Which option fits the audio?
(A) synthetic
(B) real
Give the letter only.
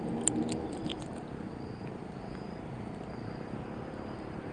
B